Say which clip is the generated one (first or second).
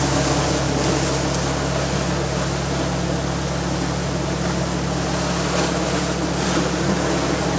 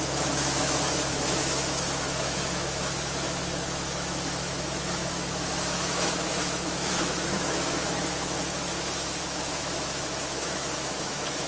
second